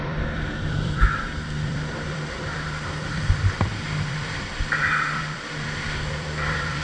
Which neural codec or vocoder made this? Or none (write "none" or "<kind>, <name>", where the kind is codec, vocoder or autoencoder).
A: vocoder, BigVGAN v2